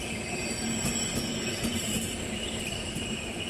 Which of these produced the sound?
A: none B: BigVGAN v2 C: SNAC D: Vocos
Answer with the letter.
B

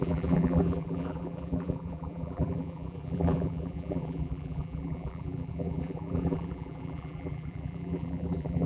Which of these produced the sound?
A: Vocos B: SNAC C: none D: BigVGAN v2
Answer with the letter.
D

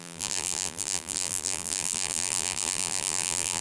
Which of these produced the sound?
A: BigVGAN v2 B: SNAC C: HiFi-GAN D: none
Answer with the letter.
A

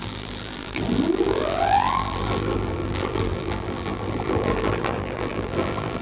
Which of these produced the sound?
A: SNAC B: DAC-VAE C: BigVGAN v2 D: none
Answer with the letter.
C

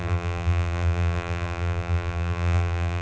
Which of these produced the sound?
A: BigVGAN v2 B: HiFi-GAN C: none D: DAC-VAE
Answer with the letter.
A